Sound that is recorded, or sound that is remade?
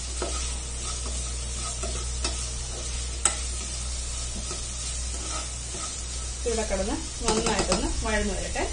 recorded